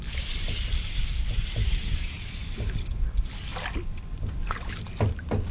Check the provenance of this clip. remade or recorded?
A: recorded